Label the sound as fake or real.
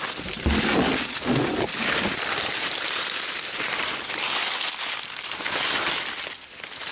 real